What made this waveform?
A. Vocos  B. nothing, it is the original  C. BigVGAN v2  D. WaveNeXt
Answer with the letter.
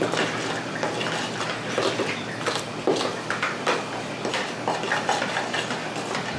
C